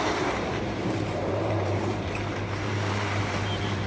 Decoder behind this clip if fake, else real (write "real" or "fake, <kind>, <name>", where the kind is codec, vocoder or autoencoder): fake, vocoder, BigVGAN v2